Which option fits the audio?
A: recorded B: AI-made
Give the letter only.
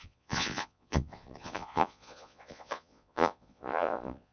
B